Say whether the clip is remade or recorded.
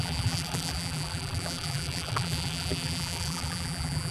remade